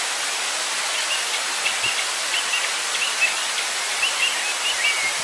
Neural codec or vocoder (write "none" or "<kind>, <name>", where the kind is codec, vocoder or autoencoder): none